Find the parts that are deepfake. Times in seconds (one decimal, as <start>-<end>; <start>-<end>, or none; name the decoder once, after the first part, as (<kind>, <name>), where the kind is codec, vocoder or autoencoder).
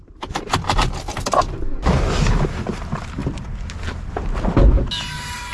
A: none